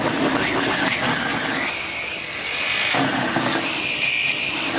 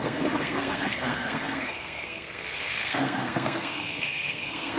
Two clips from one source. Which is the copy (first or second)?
second